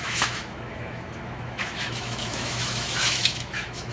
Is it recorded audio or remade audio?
remade